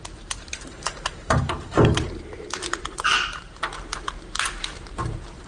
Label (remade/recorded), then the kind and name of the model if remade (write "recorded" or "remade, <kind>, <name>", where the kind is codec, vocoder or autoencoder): remade, vocoder, BigVGAN v2